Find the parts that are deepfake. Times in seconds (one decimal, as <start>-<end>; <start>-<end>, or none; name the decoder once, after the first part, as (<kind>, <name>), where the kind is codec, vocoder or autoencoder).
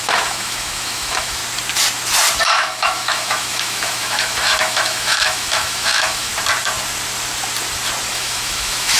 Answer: 0.0-1.4 (autoencoder, DAC-VAE); 2.4-6.3; 8.1-9.0